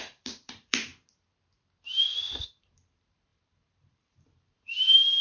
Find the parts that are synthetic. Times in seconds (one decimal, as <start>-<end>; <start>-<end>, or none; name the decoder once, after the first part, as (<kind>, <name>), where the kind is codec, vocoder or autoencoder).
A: 0.0-0.9 (vocoder, BigVGAN v2); 2.6-5.2